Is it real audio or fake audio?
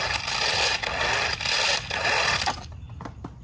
real